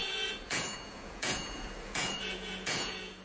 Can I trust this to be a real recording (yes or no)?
no